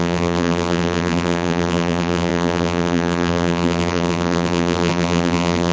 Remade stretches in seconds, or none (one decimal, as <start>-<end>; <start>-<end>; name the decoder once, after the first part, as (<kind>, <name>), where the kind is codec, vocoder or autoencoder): 0.0-5.7 (vocoder, BigVGAN v2)